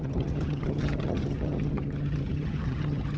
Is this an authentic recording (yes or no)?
no